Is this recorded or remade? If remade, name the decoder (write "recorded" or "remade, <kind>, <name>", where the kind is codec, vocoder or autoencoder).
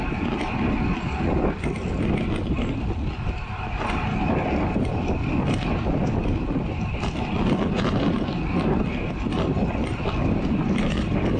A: recorded